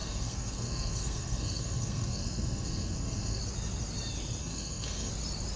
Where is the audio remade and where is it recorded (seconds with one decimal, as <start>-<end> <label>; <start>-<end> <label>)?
0.0-3.4 remade; 3.4-4.4 recorded; 4.4-5.1 remade; 5.1-5.6 recorded